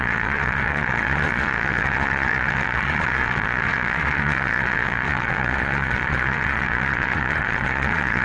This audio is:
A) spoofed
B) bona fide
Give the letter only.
A